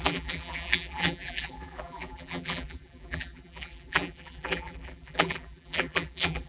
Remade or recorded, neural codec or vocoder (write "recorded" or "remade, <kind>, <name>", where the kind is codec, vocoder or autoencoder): remade, vocoder, BigVGAN v2